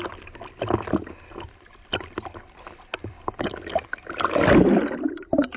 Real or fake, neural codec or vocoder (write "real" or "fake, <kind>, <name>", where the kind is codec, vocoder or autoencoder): real